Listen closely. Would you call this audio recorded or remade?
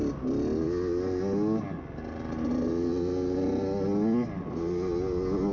recorded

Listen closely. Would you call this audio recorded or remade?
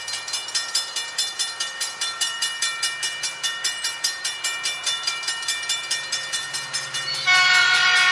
remade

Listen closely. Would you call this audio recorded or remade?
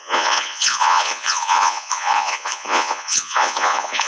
remade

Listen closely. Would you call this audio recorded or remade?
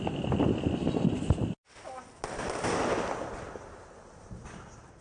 recorded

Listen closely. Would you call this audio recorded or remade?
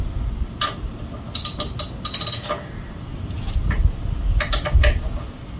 recorded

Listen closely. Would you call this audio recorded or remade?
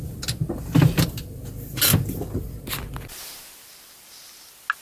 recorded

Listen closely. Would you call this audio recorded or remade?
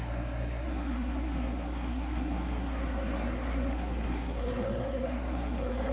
remade